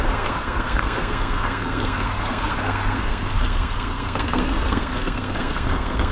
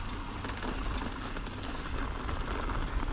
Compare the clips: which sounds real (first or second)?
second